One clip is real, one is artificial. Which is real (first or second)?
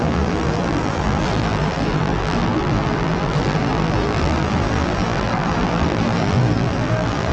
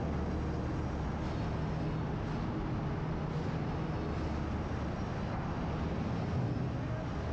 second